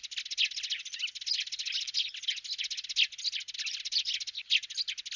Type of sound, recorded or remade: recorded